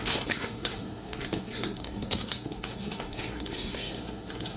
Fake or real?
fake